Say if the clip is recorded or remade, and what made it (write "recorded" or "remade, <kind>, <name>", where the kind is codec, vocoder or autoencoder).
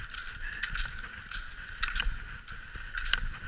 recorded